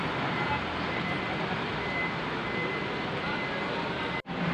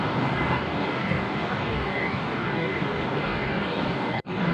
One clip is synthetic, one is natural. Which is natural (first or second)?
first